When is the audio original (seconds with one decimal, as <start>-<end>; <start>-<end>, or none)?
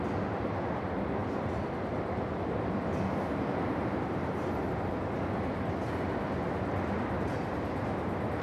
0.0-8.4